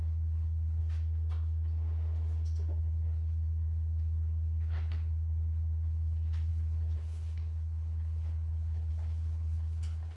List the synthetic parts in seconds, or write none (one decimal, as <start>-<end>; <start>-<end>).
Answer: 0.0-0.8; 2.8-10.2

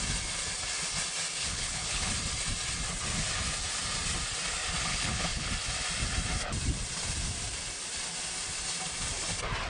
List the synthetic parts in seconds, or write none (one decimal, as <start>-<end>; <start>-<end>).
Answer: 1.4-2.1; 4.9-5.5